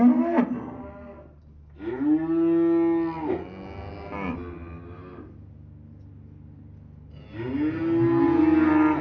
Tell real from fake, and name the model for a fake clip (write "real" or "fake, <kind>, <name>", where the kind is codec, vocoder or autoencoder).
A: real